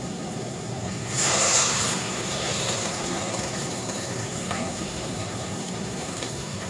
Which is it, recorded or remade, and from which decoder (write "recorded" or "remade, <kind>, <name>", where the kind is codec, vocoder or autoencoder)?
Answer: remade, codec, SNAC